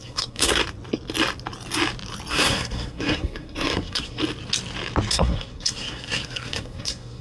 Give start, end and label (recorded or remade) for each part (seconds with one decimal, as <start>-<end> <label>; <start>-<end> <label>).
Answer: 0.0-0.6 remade; 0.6-2.3 recorded; 2.3-4.2 remade; 4.2-5.1 recorded; 5.1-7.2 remade

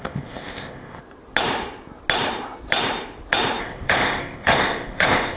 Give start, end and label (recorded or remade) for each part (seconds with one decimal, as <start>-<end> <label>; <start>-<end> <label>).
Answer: 0.0-1.0 remade; 1.0-3.6 recorded; 3.6-5.4 remade

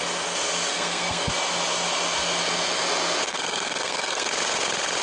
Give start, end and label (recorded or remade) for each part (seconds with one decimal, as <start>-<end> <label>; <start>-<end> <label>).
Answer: 0.0-0.7 recorded; 0.7-1.3 remade; 1.3-3.3 recorded; 3.3-4.3 remade; 4.3-5.0 recorded

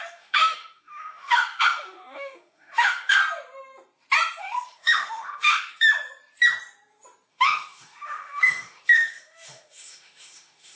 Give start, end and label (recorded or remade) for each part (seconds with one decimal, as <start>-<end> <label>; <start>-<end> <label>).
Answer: 0.0-3.2 remade; 3.2-4.4 recorded; 4.4-5.9 remade; 5.9-7.3 recorded; 7.3-10.8 remade

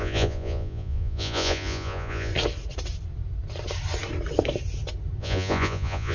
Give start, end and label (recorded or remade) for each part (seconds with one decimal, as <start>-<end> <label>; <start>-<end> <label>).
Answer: 0.0-2.3 remade; 2.3-5.2 recorded; 5.2-6.1 remade

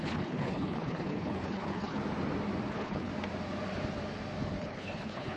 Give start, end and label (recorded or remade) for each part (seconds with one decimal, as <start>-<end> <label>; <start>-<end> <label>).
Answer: 0.0-2.0 remade; 2.0-2.7 recorded; 2.7-3.1 remade; 3.1-4.6 recorded; 4.6-5.4 remade

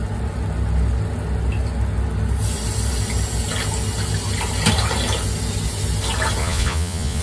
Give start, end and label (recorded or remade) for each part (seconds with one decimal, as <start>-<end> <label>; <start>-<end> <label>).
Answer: 0.0-6.4 recorded; 6.4-7.2 remade